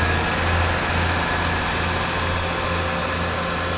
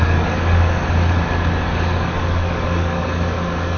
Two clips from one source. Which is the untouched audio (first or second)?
first